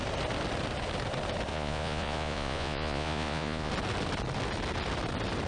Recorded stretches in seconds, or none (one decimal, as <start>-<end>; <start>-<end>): 0.0-1.5; 3.7-5.5